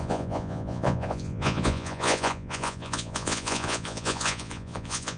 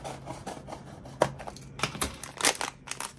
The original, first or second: second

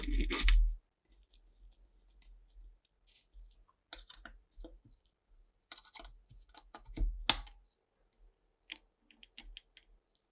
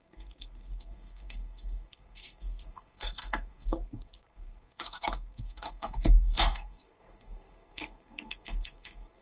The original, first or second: first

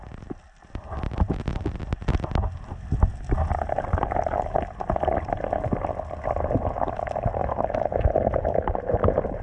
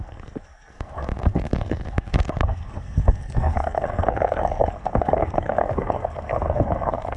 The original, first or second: first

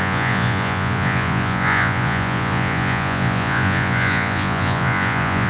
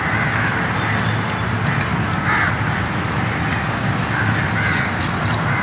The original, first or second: second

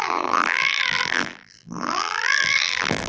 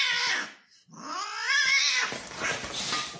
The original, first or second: second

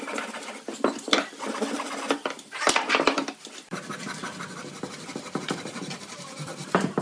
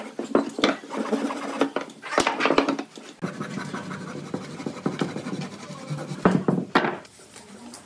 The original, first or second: second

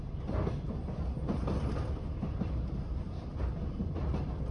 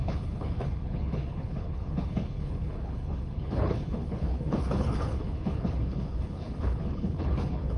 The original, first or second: first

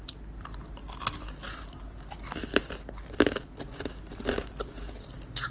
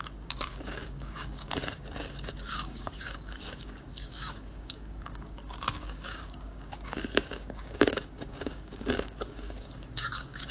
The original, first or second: first